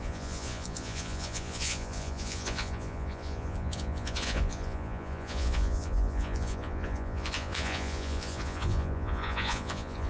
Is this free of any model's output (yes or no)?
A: no